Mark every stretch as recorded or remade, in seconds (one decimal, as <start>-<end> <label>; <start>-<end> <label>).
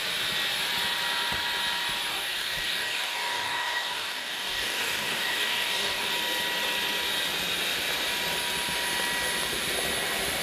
0.0-2.1 recorded; 2.1-6.1 remade; 6.1-10.4 recorded